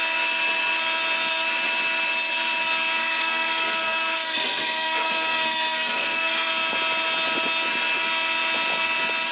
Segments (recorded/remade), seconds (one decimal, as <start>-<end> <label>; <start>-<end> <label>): 0.0-3.0 recorded; 3.0-6.5 remade; 6.5-9.3 recorded